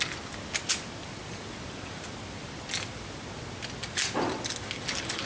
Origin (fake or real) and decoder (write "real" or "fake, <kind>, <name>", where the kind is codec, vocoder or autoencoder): real